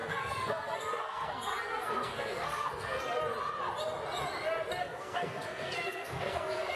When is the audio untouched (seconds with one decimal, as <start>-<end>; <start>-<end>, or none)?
3.2-4.8